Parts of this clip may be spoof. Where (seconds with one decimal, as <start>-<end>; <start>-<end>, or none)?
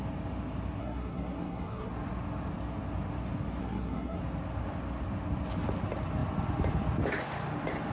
0.8-1.9; 3.6-4.2